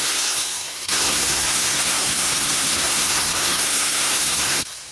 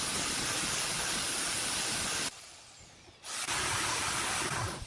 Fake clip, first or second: first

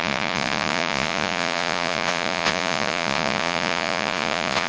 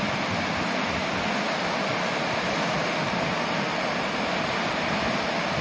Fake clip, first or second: first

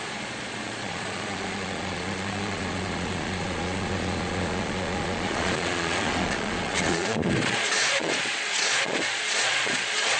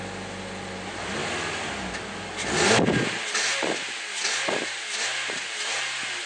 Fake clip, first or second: first